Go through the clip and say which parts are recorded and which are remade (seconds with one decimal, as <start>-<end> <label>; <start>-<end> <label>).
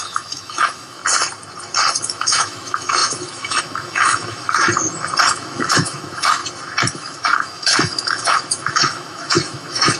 0.0-1.0 remade; 1.0-2.0 recorded; 2.0-4.7 remade; 4.7-5.3 recorded; 5.3-6.4 remade; 6.4-7.0 recorded; 7.0-10.0 remade